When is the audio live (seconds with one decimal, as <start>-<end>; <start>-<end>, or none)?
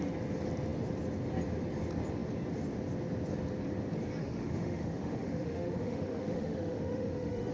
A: 0.0-4.2